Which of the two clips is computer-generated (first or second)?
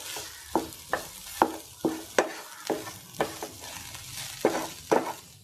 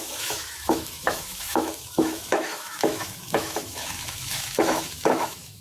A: second